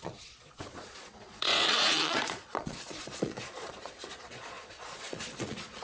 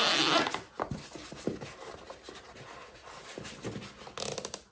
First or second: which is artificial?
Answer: first